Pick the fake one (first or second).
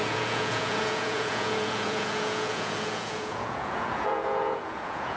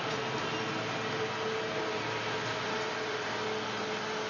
first